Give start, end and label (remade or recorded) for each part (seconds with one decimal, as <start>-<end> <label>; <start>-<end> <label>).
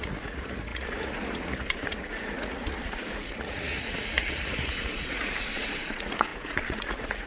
0.0-7.3 remade